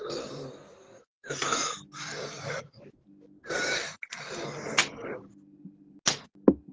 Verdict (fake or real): real